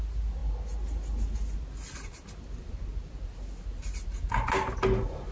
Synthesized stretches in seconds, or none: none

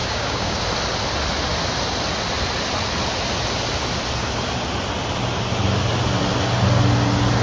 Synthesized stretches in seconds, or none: 0.0-0.6 (codec, DAC)

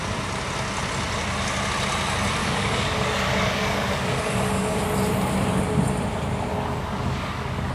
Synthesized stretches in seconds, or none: 2.4-4.8 (codec, DAC); 6.5-7.7

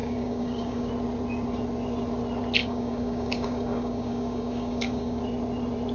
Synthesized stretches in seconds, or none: 0.0-0.9 (codec, DAC); 2.6-5.2

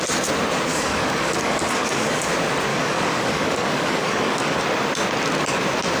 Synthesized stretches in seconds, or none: 0.7-2.3 (codec, DAC); 2.7-4.6

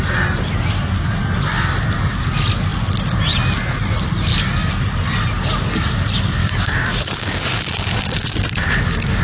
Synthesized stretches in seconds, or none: 6.4-9.2 (codec, DAC)

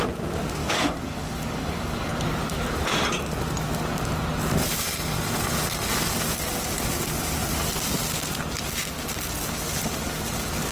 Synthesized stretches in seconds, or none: 0.6-2.1 (codec, DAC)

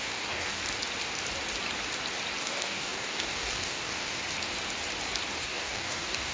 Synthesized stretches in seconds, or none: 0.0-0.6 (codec, DAC); 2.4-4.2; 5.4-6.3